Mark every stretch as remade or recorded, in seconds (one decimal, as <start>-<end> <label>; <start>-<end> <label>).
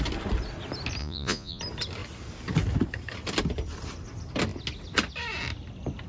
0.0-1.0 recorded; 1.0-1.6 remade; 1.6-6.1 recorded